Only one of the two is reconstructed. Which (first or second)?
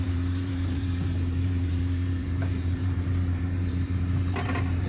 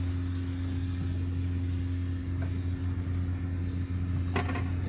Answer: first